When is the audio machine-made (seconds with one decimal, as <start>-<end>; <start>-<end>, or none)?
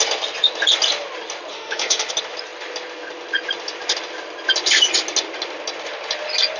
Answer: 1.5-2.1